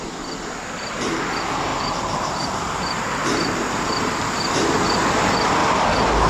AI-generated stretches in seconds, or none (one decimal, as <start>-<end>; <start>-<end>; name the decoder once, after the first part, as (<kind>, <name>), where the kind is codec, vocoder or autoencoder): 1.7-4.1 (vocoder, BigVGAN v2)